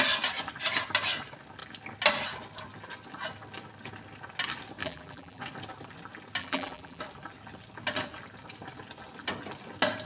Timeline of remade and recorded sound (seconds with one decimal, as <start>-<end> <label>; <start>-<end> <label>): 0.0-4.8 recorded; 4.8-5.4 remade; 5.4-6.4 recorded; 6.4-7.0 remade; 7.0-10.1 recorded